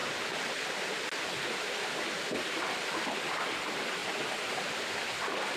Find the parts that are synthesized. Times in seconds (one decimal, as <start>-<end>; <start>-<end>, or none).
none